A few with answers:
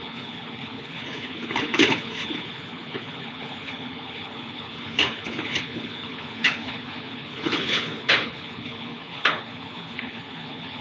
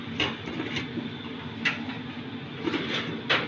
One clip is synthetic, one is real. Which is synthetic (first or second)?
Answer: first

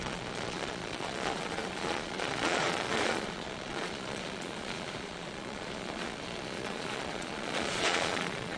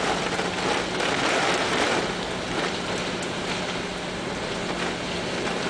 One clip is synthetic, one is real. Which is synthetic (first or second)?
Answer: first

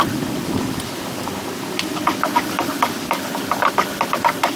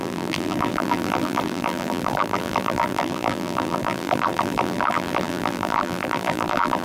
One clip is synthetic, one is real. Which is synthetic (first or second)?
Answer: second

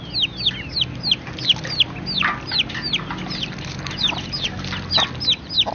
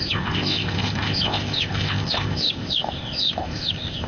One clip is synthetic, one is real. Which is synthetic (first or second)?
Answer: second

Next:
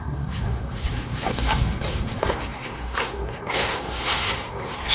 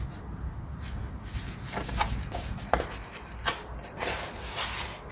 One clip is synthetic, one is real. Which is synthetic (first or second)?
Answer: first